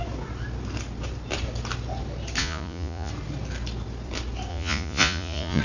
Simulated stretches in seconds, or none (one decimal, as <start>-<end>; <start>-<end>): 2.4-3.1; 4.5-5.6